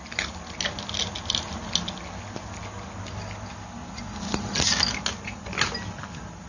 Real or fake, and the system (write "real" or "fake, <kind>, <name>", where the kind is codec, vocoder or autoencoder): real